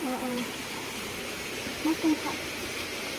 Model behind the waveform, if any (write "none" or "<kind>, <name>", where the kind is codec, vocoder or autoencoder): vocoder, BigVGAN v2